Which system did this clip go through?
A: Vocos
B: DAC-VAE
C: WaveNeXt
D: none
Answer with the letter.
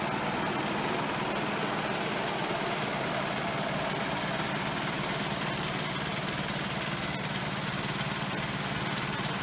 D